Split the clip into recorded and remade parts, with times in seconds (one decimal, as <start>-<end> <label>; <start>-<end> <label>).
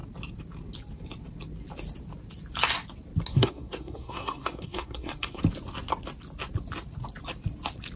0.0-3.3 recorded; 3.3-5.4 remade; 5.4-8.0 recorded